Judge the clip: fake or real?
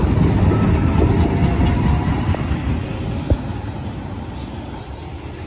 real